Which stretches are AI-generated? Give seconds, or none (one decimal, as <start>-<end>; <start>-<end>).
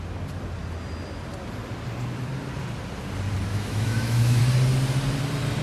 3.5-4.4